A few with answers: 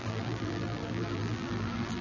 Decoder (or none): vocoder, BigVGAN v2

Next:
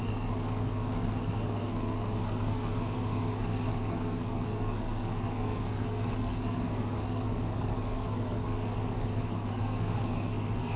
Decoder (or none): codec, SNAC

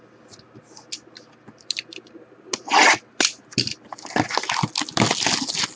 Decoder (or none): none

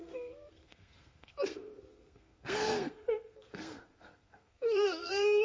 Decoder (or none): codec, SNAC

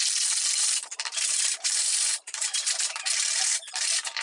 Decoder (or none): vocoder, BigVGAN v2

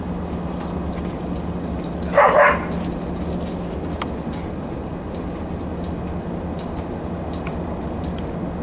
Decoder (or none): none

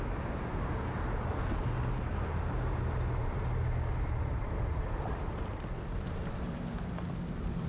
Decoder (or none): none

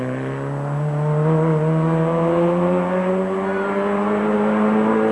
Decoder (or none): none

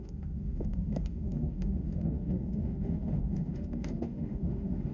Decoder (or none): autoencoder, DAC-VAE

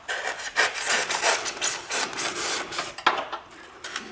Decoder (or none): none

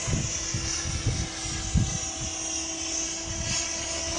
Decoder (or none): none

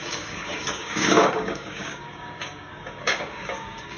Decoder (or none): codec, DAC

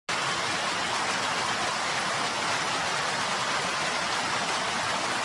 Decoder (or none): none